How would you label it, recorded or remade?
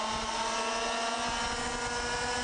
recorded